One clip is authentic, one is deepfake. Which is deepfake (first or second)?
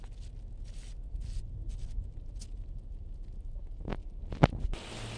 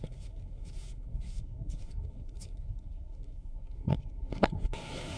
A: second